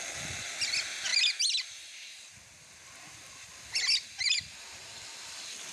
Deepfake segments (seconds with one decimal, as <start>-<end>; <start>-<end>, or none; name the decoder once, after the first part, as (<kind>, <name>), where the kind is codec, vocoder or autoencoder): none